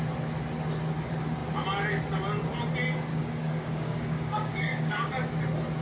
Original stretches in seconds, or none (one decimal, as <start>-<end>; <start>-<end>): 0.0-3.1; 5.1-5.8